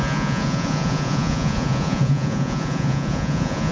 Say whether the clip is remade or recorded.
remade